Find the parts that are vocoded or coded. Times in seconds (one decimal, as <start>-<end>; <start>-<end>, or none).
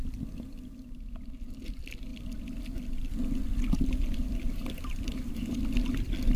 none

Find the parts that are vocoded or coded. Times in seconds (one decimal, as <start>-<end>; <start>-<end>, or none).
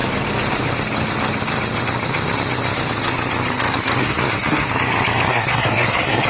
4.0-4.7; 5.3-6.3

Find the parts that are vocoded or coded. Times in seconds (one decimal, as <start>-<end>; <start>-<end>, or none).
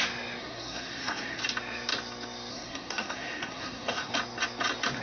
0.4-1.4; 2.5-4.1